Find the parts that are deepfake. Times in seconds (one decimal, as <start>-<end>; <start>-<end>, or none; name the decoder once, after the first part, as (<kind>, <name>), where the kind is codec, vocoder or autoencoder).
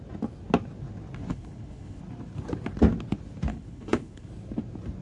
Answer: 1.3-2.0 (codec, HILCodec); 3.5-4.3